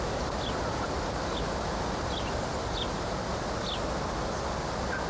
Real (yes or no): yes